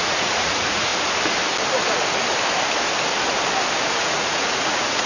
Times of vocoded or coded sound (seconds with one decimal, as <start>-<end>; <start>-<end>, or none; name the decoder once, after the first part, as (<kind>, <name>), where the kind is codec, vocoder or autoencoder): 0.0-0.9 (vocoder, Vocos); 4.0-5.1

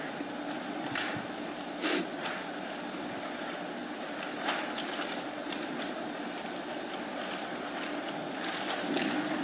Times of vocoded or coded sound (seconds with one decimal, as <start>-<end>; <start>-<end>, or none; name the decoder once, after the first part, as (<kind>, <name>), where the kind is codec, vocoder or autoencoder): none

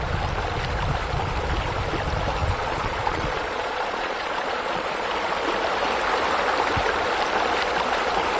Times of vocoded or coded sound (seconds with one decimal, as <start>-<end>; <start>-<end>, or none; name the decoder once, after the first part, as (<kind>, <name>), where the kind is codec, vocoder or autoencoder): 2.4-5.1 (vocoder, Vocos)

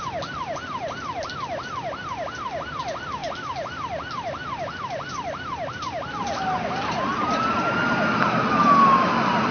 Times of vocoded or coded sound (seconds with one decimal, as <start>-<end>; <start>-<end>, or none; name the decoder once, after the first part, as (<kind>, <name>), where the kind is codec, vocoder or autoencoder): none

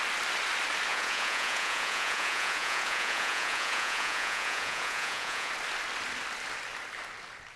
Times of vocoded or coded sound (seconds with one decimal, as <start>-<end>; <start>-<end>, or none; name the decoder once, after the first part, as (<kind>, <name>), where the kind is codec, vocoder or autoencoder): 0.9-5.5 (vocoder, Vocos)